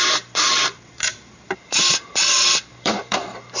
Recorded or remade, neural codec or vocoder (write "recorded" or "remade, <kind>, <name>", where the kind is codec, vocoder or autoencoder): remade, vocoder, BigVGAN v2